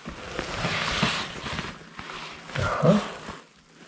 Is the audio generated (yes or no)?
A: no